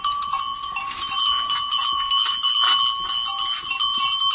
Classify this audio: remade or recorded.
recorded